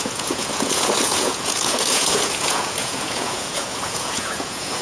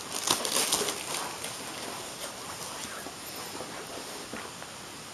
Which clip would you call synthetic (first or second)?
first